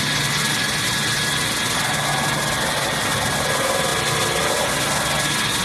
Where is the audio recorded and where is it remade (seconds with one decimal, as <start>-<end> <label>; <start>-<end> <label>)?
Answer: 0.0-5.6 recorded